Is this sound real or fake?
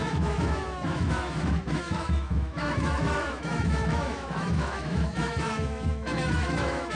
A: fake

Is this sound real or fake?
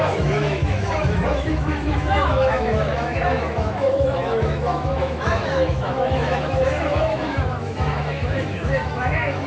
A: fake